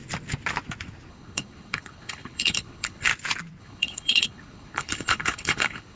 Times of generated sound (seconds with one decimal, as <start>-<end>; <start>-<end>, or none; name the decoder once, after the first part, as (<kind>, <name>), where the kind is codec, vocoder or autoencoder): 1.1-3.1 (codec, HILCodec); 3.6-6.0